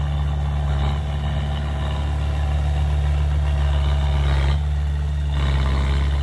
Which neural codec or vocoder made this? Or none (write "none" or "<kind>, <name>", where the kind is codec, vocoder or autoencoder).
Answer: none